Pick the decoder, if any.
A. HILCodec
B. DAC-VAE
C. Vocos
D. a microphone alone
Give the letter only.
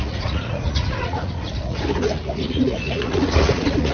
C